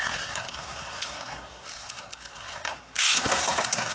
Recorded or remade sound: remade